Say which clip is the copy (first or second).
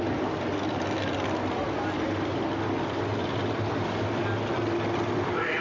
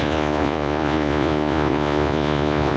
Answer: second